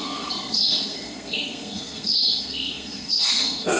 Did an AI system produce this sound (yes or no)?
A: yes